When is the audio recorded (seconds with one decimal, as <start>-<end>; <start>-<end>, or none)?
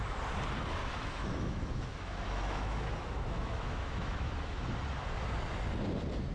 0.0-0.8; 4.6-6.3